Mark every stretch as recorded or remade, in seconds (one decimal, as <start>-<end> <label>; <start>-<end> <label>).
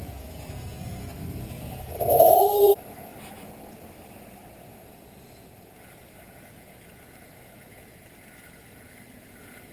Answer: 0.0-3.1 remade; 3.1-4.7 recorded; 4.7-9.7 remade